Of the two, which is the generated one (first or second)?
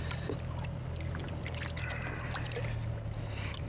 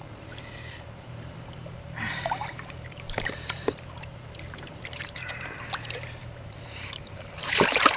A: second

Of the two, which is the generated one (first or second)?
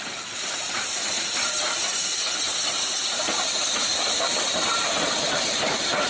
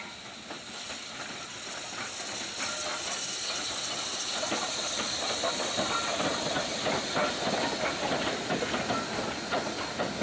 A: first